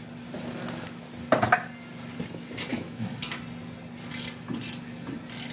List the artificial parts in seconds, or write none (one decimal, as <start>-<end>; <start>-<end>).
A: 2.7-3.4